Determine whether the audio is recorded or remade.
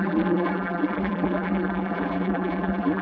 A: remade